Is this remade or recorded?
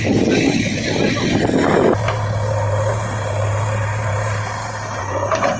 recorded